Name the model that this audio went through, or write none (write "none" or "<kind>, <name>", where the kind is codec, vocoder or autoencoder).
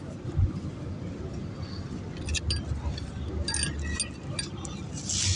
none